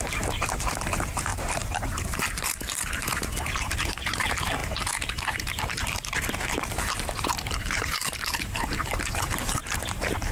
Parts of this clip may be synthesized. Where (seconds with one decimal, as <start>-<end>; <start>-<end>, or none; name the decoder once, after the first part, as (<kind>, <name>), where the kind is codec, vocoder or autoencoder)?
0.0-10.3 (vocoder, BigVGAN v2)